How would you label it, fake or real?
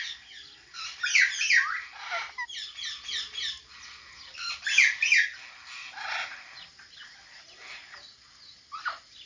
real